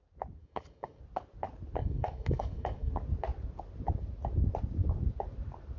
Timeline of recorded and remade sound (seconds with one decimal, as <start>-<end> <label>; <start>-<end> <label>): 0.0-0.4 recorded; 0.4-1.0 remade; 1.0-1.8 recorded; 1.8-2.9 remade; 2.9-5.8 recorded